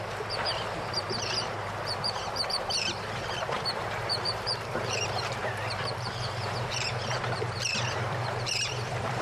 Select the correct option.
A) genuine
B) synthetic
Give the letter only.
B